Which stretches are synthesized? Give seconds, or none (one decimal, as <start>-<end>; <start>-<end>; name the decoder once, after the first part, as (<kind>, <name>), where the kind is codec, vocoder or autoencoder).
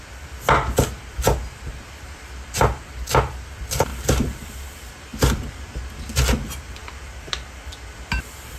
3.9-4.6 (vocoder, BigVGAN v2); 5.1-5.6; 6.8-7.7